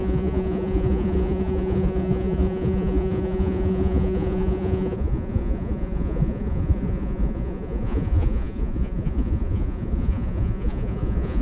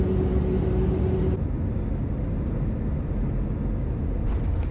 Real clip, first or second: second